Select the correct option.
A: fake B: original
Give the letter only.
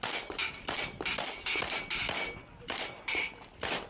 B